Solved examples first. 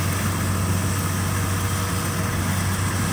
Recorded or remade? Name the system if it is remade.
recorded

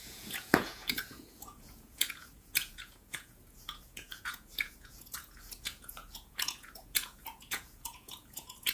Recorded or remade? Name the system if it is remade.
remade, vocoder, Vocos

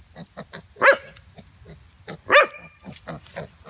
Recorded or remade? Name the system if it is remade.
recorded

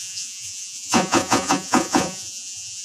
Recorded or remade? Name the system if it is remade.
remade, vocoder, Vocos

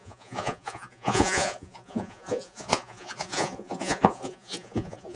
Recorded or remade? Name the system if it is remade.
remade, vocoder, Vocos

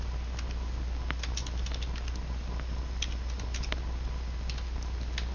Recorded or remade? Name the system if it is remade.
recorded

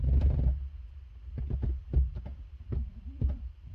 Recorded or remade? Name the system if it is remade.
recorded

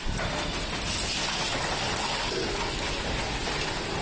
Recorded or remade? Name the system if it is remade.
recorded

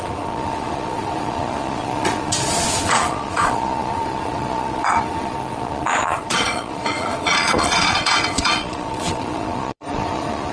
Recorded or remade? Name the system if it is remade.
remade, vocoder, Vocos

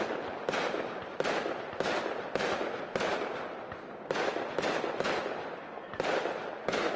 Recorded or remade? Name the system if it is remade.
recorded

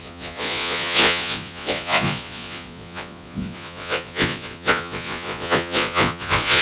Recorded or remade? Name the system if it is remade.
remade, vocoder, Vocos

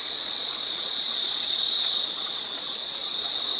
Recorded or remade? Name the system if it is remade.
remade, vocoder, Vocos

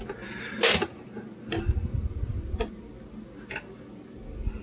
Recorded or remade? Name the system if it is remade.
recorded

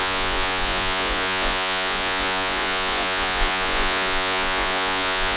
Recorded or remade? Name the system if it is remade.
remade, vocoder, Vocos